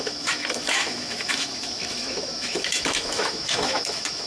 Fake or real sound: fake